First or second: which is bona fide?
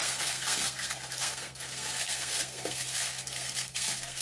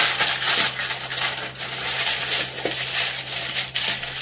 second